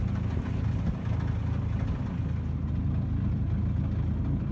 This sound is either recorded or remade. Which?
recorded